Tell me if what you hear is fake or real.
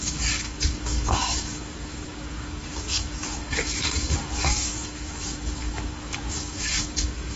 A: fake